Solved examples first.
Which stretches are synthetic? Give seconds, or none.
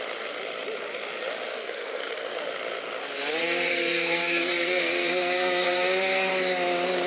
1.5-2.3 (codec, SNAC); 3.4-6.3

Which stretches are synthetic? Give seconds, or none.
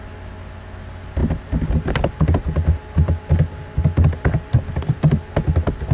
none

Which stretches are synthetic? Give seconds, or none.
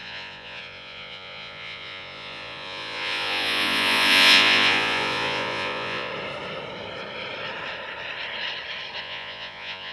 0.0-6.1 (vocoder, Vocos); 9.0-9.9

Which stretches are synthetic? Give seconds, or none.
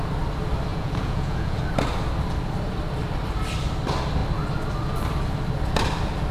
0.7-1.6 (vocoder, Vocos)